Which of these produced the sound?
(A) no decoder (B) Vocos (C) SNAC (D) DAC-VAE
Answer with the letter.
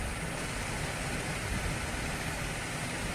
A